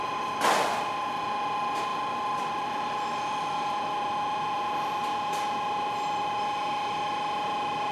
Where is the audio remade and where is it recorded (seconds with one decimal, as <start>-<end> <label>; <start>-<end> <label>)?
0.0-1.9 recorded; 1.9-5.0 remade; 5.0-7.9 recorded